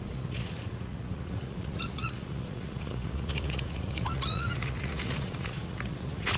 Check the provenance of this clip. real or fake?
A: fake